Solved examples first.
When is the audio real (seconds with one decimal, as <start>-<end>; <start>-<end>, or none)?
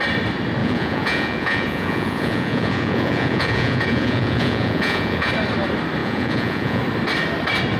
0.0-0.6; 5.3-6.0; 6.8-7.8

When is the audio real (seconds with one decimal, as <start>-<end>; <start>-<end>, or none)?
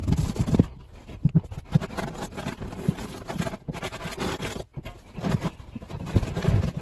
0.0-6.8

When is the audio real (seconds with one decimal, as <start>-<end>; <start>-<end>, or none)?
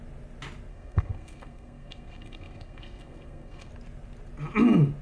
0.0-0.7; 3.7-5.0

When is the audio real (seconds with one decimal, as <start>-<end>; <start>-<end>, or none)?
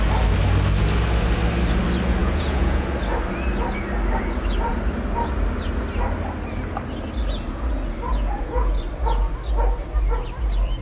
0.0-2.2; 2.9-8.1; 8.8-10.8